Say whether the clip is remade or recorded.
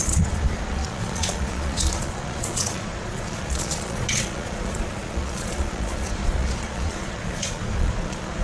remade